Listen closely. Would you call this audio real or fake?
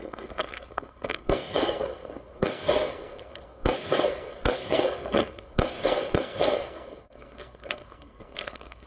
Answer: fake